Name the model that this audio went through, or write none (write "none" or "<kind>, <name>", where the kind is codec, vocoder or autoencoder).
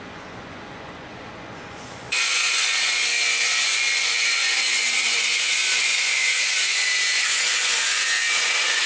vocoder, Vocos